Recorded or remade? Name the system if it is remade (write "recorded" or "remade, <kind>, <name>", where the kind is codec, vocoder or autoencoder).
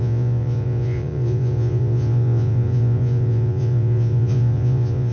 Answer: remade, vocoder, Vocos